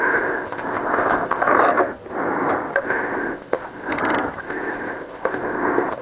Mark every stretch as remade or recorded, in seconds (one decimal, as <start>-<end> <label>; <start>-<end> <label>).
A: 0.0-1.5 remade; 1.5-2.8 recorded; 2.8-3.9 remade; 3.9-4.4 recorded; 4.4-6.0 remade